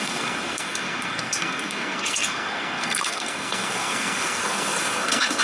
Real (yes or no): no